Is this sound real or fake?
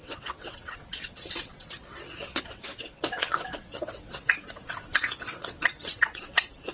fake